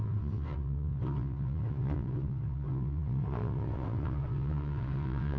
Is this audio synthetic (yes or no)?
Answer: yes